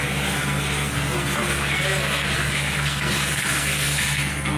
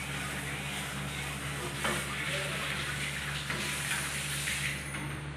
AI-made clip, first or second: first